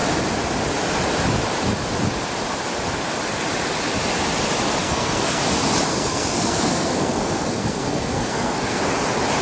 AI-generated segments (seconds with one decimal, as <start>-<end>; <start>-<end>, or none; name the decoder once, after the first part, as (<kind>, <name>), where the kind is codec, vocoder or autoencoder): 4.8-5.4 (codec, SNAC); 5.9-8.8